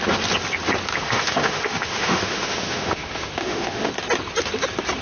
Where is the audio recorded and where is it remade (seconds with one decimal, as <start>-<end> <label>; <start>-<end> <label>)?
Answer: 0.0-0.9 recorded; 0.9-3.9 remade; 3.9-5.0 recorded